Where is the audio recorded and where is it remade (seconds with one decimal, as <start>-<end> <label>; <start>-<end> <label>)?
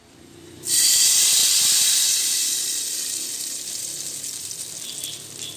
0.0-1.4 recorded; 1.4-4.7 remade; 4.7-5.6 recorded